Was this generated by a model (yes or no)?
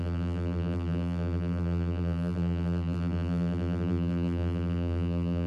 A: yes